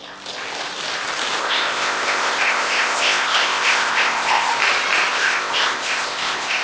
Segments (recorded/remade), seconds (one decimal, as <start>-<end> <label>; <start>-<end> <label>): 0.0-1.4 recorded; 1.4-4.5 remade; 4.5-5.1 recorded; 5.1-6.6 remade